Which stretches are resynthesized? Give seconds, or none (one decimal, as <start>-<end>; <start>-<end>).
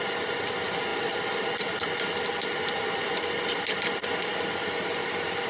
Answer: none